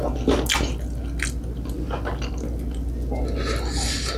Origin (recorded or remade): recorded